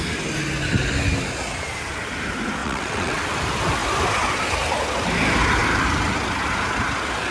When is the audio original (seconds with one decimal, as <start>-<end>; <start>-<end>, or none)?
0.0-2.6; 3.2-7.3